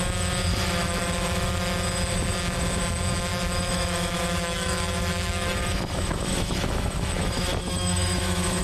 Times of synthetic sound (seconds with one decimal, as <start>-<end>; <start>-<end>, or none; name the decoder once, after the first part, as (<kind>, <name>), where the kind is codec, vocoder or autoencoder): 0.5-1.8 (autoencoder, DAC-VAE); 3.3-8.6